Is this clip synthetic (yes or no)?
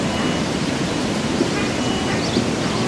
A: no